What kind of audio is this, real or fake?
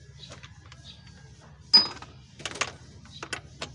real